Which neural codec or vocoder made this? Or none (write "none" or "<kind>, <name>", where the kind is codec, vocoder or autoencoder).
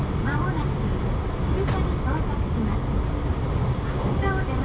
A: none